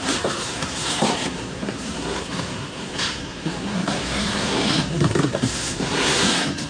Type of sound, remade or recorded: remade